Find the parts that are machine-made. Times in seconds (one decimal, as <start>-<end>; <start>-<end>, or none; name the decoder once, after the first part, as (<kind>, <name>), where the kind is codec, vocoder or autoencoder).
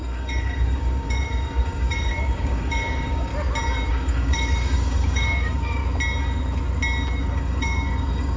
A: 0.0-3.3 (codec, DAC); 3.9-5.8; 7.2-8.4